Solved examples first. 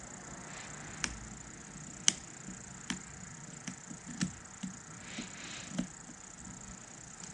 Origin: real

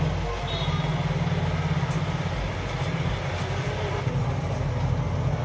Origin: real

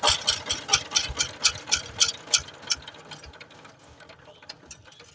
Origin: real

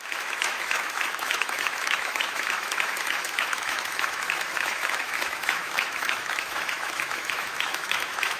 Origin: fake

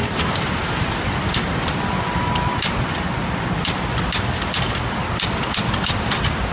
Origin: fake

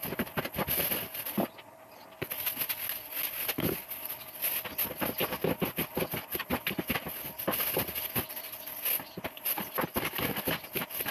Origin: real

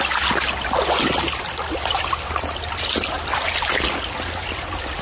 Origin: real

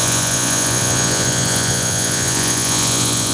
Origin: fake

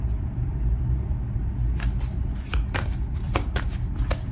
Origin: fake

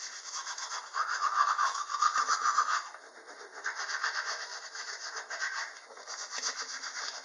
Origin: fake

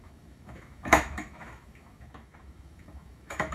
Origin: fake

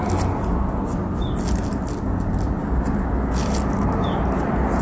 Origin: real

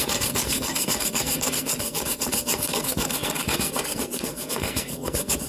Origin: fake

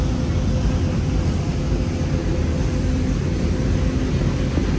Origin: real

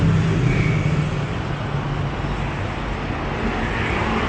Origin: real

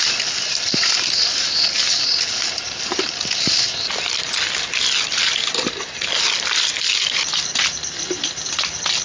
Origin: real